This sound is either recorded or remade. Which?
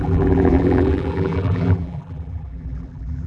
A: remade